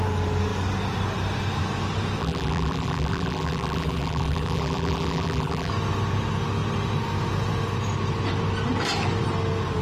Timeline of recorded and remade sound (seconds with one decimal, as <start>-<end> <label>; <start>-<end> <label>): 0.0-2.2 recorded; 2.2-5.7 remade; 5.7-9.8 recorded